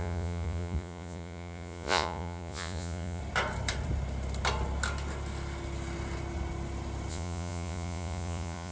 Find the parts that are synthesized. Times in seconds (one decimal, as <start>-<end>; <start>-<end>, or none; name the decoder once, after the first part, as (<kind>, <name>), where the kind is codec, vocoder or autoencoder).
0.0-3.2 (vocoder, Vocos); 7.1-8.7